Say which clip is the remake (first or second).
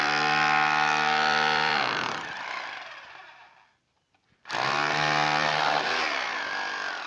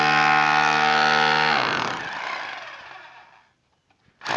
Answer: first